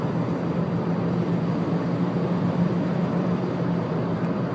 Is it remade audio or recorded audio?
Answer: recorded